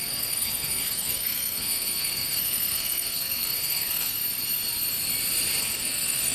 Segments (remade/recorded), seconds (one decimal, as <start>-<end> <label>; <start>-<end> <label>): 0.0-4.2 remade; 4.2-5.6 recorded; 5.6-6.3 remade